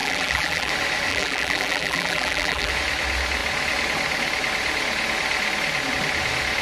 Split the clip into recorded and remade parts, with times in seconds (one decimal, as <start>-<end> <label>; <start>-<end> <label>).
0.0-0.7 remade; 0.7-1.1 recorded; 1.1-2.7 remade; 2.7-6.6 recorded